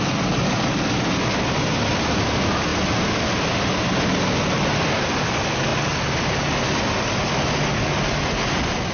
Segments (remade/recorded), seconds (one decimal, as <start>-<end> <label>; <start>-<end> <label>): 0.0-8.9 recorded